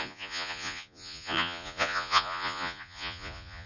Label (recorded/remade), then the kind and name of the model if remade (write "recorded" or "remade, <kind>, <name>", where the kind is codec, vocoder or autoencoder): remade, vocoder, Vocos